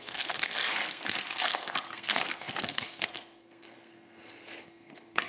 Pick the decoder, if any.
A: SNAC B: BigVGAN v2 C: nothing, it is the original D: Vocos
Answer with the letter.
A